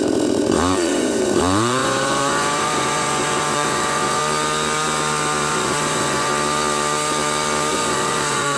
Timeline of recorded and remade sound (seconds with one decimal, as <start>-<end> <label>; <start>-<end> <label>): 0.0-4.2 remade; 4.2-5.5 recorded; 5.5-6.3 remade; 6.3-7.7 recorded; 7.7-8.6 remade